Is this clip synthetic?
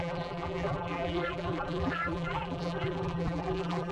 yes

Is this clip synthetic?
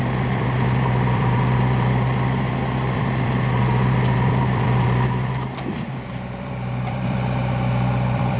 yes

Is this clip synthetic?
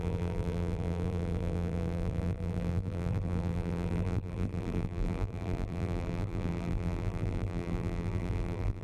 yes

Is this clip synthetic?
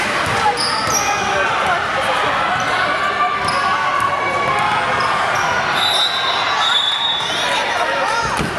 no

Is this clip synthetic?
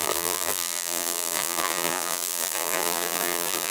yes